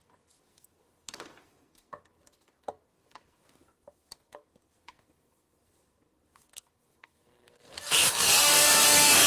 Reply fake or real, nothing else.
fake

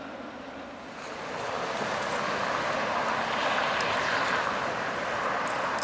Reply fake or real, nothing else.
real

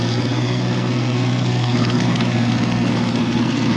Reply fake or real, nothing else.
fake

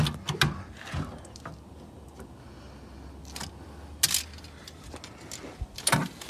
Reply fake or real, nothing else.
real